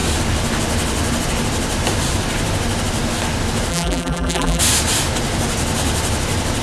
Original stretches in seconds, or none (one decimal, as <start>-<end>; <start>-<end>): 0.0-3.7; 4.6-6.6